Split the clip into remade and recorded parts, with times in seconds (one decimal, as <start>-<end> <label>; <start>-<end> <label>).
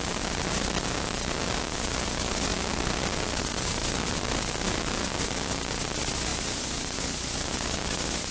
0.0-8.3 recorded